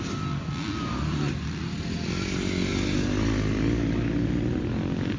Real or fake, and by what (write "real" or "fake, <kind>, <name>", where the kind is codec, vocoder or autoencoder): real